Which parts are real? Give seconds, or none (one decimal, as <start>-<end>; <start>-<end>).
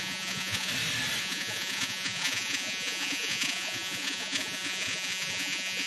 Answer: 0.7-1.2